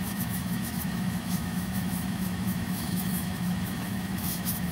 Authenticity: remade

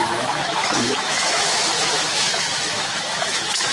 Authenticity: remade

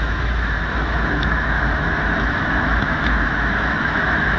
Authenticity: remade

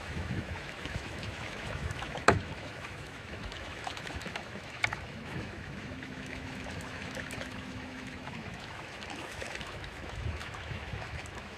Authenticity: remade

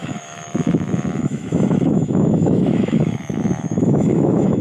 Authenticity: remade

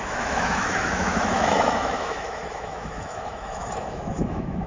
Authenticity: remade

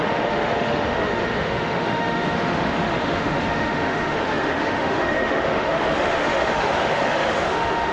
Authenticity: remade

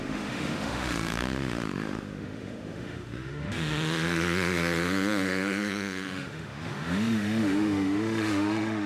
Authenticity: remade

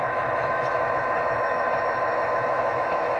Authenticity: remade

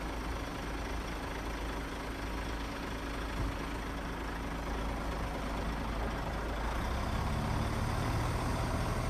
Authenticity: recorded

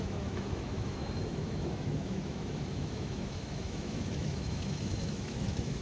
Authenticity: remade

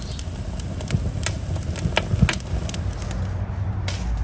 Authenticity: recorded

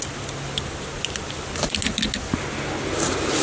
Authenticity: recorded